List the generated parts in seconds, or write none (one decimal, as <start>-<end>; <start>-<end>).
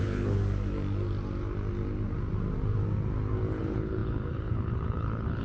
0.0-0.4; 3.6-5.4